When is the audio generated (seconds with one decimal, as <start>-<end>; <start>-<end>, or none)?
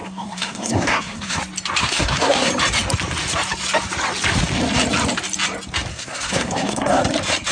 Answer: 0.0-1.4; 1.8-2.5; 5.9-7.0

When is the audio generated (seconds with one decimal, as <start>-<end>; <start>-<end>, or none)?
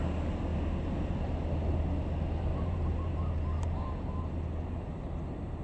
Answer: 2.5-4.3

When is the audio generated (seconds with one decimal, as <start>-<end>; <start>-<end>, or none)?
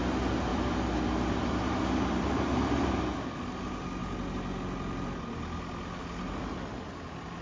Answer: 0.5-3.0; 6.0-6.9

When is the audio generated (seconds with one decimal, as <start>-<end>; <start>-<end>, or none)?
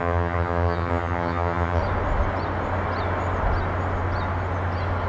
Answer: 0.0-1.8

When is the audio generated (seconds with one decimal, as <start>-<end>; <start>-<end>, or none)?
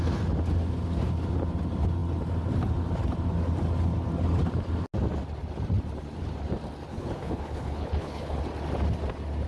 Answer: 6.9-8.4